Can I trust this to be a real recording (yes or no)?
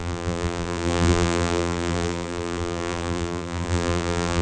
no